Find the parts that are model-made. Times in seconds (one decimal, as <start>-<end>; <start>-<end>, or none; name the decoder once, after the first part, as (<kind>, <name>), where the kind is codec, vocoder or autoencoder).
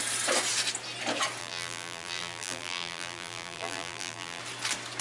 1.4-4.4 (vocoder, BigVGAN v2)